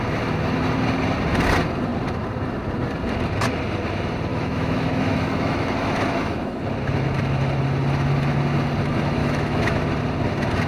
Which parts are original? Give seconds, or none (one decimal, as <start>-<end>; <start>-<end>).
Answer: 0.0-4.3; 6.6-9.2; 9.8-10.7